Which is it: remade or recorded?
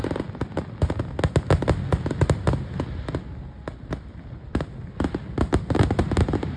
recorded